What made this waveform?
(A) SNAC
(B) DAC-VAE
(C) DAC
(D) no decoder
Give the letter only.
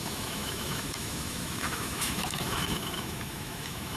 B